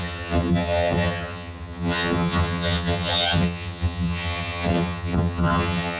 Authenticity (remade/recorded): remade